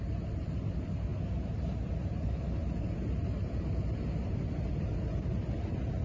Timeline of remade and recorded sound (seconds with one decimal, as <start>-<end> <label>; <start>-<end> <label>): 0.0-6.0 recorded